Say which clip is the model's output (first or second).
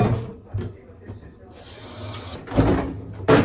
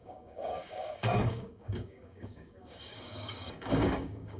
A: second